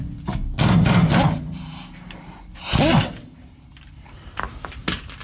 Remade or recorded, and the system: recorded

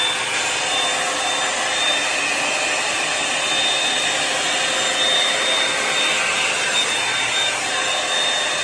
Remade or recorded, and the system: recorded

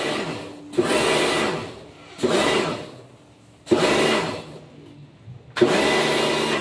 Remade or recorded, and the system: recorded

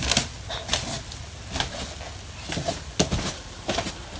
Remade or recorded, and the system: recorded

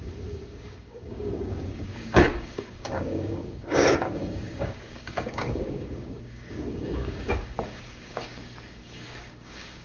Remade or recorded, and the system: remade, codec, DAC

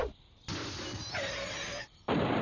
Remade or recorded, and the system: recorded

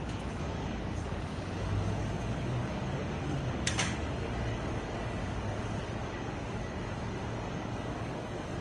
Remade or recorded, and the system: remade, codec, DAC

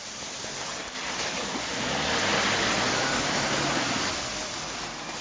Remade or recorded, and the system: recorded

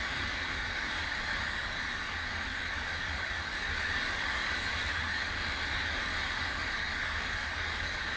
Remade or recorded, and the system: remade, codec, DAC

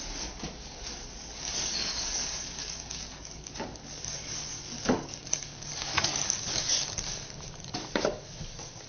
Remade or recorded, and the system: remade, codec, DAC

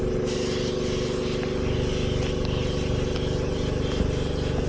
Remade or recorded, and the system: recorded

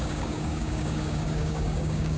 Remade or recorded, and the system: remade, codec, DAC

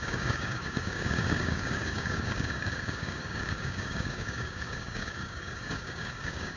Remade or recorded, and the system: remade, codec, DAC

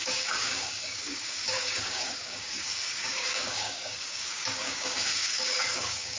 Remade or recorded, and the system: remade, codec, DAC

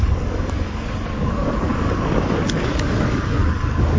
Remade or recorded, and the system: remade, codec, DAC